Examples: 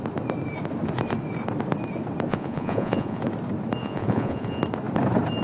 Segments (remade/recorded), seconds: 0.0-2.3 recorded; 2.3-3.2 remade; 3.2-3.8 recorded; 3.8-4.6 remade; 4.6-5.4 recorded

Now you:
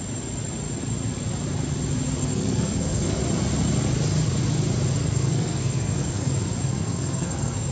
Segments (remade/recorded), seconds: 0.0-2.2 recorded; 2.2-3.2 remade; 3.2-5.0 recorded; 5.0-6.3 remade; 6.3-6.7 recorded; 6.7-7.7 remade